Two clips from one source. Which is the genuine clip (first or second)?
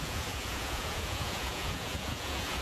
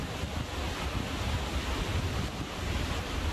second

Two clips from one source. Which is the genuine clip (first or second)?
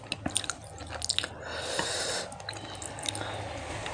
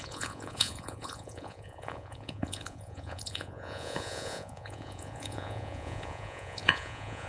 first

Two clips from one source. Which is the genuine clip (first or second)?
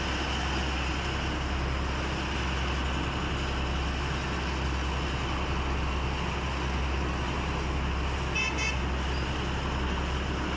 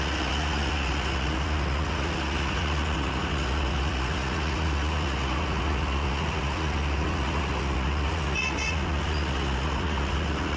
first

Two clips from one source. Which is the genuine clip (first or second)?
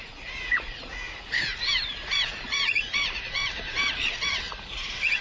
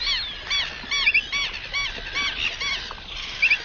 second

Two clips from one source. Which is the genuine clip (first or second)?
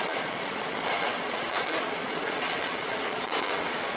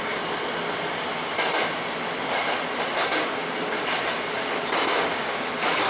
second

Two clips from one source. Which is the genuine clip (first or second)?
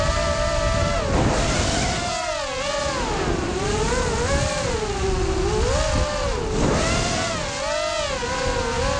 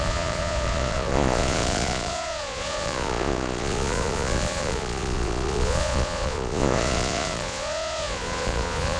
first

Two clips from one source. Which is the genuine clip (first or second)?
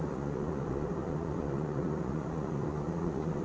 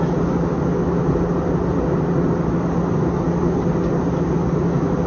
second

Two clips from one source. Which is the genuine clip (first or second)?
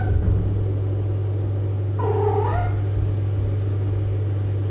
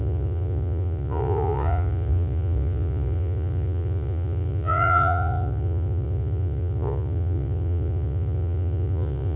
first